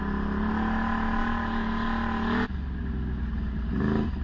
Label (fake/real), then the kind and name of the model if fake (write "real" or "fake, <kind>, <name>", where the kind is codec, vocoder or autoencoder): real